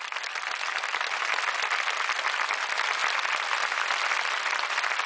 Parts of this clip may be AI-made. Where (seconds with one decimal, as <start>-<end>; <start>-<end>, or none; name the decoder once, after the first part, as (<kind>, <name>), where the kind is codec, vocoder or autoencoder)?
none